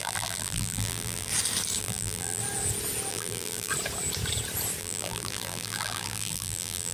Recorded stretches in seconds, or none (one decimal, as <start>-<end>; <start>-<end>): 1.3-1.8; 2.4-3.1; 3.7-4.8